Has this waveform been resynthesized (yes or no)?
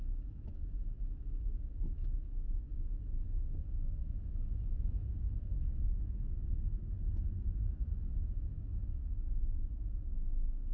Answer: yes